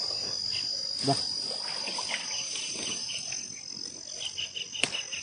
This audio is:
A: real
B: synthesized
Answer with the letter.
A